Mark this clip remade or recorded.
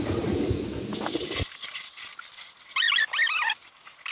recorded